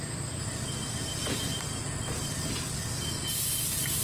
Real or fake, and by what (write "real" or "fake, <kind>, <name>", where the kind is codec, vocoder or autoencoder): real